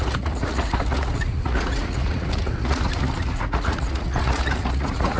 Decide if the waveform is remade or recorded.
remade